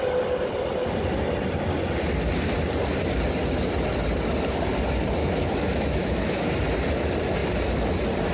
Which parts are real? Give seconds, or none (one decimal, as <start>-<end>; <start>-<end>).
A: 0.0-5.2; 6.5-8.3